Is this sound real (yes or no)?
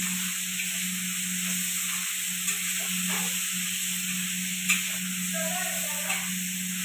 yes